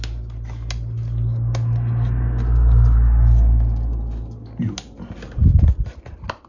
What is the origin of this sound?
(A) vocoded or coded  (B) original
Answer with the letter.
B